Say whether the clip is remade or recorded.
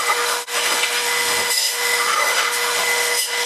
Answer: remade